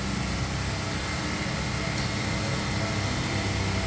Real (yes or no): yes